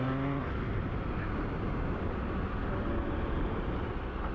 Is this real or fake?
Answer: real